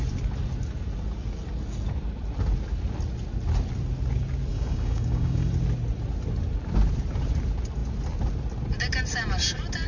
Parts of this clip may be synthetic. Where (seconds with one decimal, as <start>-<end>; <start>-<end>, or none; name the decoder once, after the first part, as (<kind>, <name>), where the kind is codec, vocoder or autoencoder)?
4.5-5.5 (codec, DAC)